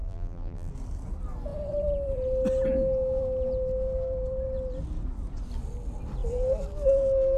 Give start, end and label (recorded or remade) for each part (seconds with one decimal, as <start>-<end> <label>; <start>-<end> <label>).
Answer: 0.0-0.7 remade; 0.7-7.4 recorded